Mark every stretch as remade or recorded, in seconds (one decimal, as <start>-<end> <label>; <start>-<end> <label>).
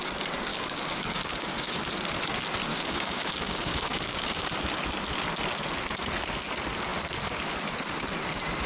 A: 0.0-0.5 recorded; 0.5-1.8 remade; 1.8-2.7 recorded; 2.7-4.5 remade; 4.5-8.7 recorded